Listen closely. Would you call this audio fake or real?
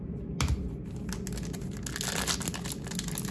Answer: real